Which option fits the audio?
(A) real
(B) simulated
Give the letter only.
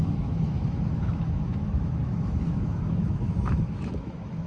B